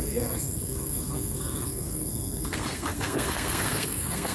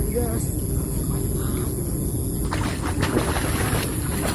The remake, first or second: first